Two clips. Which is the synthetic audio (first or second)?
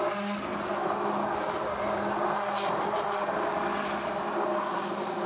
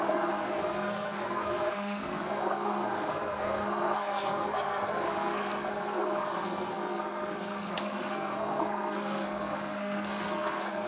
second